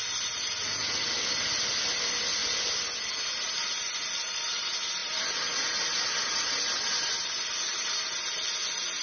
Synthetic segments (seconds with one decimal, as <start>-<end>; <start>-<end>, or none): none